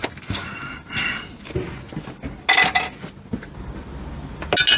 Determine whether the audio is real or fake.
real